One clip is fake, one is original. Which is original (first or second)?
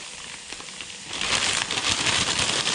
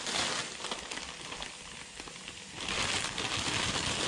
second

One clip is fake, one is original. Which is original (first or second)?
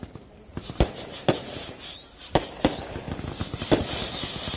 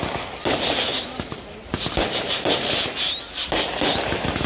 second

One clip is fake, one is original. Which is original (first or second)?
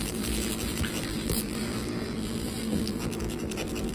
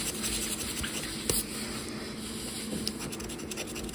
second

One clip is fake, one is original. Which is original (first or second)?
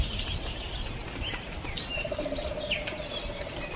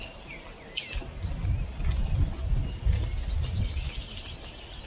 second